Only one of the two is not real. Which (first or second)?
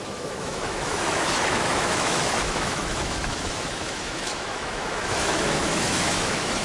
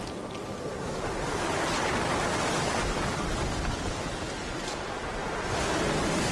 first